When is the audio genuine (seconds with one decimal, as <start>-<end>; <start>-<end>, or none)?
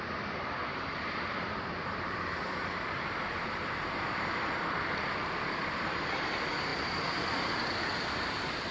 0.0-0.6; 5.8-8.7